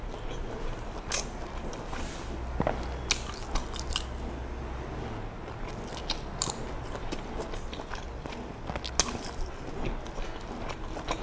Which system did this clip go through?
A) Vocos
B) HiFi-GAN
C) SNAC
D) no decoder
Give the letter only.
D